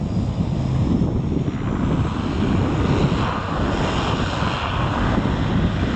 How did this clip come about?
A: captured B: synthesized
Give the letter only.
A